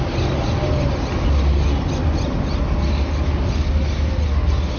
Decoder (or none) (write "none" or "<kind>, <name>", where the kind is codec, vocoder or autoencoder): none